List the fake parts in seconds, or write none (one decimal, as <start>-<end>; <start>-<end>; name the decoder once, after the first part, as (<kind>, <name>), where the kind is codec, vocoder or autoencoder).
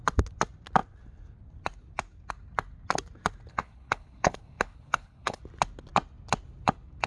3.5-5.4 (codec, HILCodec)